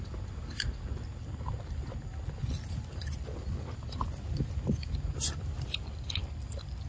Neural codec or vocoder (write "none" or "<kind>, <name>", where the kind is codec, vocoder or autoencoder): none